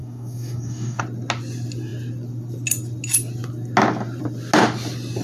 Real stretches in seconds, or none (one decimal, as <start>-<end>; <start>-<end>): 1.0-5.2